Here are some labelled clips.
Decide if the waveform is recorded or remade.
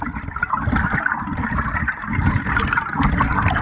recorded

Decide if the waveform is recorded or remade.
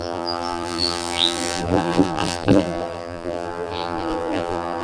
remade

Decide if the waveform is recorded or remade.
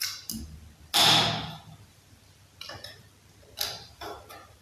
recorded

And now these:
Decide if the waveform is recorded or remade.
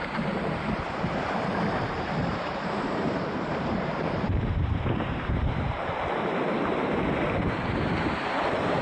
remade